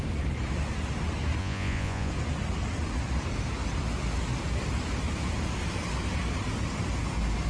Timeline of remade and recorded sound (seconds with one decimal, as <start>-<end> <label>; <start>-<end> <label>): 0.0-1.4 recorded; 1.4-2.1 remade; 2.1-7.5 recorded

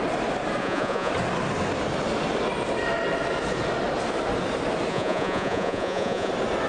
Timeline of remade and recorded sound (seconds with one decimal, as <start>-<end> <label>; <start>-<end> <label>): 0.0-0.6 recorded; 0.6-1.1 remade; 1.1-4.9 recorded; 4.9-6.3 remade; 6.3-6.7 recorded

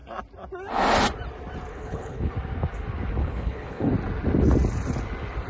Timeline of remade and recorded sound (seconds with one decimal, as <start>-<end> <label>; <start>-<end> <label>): 0.0-1.7 recorded; 1.7-2.3 remade; 2.3-3.2 recorded; 3.2-3.9 remade; 3.9-5.5 recorded

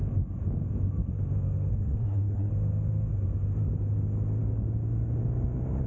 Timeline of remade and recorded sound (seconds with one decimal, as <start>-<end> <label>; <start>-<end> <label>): 0.0-1.7 recorded; 1.7-2.5 remade; 2.5-5.9 recorded

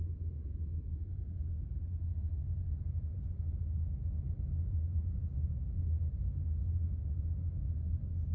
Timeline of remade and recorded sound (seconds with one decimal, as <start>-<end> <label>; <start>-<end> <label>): 0.0-5.2 recorded; 5.2-7.0 remade; 7.0-8.3 recorded

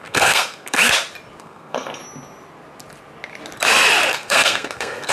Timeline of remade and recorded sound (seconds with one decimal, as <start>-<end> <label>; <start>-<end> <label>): 0.0-0.8 remade; 0.8-1.4 recorded; 1.4-2.0 remade; 2.0-4.1 recorded; 4.1-5.1 remade

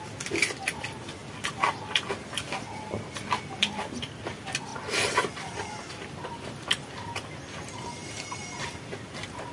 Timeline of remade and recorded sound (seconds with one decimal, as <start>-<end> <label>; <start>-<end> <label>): 0.0-9.5 recorded

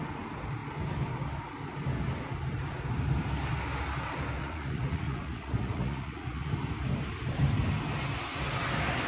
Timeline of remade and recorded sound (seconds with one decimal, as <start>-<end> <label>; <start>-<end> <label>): 0.0-4.4 recorded; 4.4-6.5 remade; 6.5-9.1 recorded